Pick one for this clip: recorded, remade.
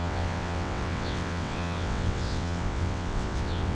remade